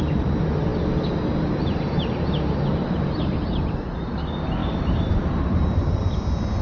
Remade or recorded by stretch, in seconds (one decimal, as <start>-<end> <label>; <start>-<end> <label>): 0.0-4.6 recorded; 4.6-6.0 remade; 6.0-6.6 recorded